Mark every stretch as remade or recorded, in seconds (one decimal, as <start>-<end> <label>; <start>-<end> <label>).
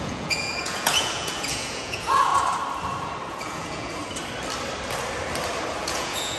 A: 0.0-2.3 remade; 2.3-3.3 recorded; 3.3-4.0 remade; 4.0-5.8 recorded; 5.8-6.4 remade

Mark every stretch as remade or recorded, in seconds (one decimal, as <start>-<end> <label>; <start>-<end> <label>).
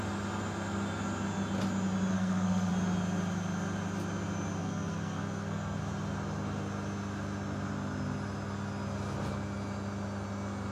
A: 0.0-2.1 recorded; 2.1-2.7 remade; 2.7-4.6 recorded; 4.6-5.8 remade; 5.8-10.7 recorded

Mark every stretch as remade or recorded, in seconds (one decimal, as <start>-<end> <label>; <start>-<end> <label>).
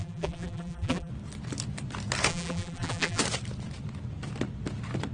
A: 0.0-1.1 remade; 1.1-2.3 recorded; 2.3-3.2 remade; 3.2-5.1 recorded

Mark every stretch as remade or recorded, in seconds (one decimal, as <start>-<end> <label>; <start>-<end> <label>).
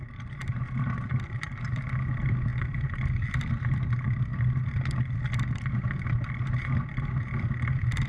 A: 0.0-8.1 recorded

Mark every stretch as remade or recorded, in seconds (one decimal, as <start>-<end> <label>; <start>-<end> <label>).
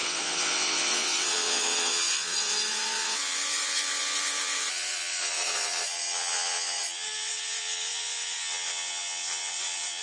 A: 0.0-10.0 remade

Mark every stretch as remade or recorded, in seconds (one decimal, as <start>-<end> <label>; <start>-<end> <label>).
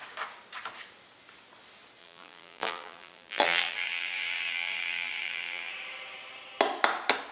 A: 0.0-2.0 recorded; 2.0-5.7 remade; 5.7-7.3 recorded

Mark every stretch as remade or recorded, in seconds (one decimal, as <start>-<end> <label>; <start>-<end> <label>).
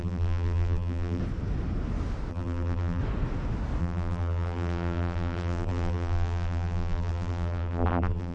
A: 0.0-1.2 remade; 1.2-2.3 recorded; 2.3-3.0 remade; 3.0-3.8 recorded; 3.8-8.3 remade